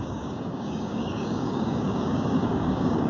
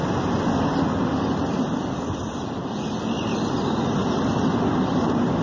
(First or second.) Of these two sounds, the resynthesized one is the first